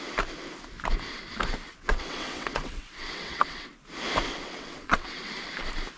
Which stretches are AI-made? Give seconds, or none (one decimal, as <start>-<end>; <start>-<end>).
1.7-3.7; 4.3-5.3